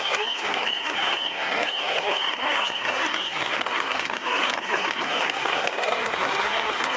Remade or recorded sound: remade